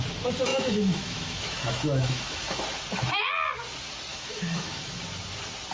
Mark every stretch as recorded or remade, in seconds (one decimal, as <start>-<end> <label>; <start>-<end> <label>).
0.0-0.5 recorded; 0.5-2.6 remade; 2.6-4.1 recorded; 4.1-5.0 remade; 5.0-5.7 recorded